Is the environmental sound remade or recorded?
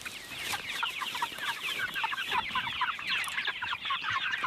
remade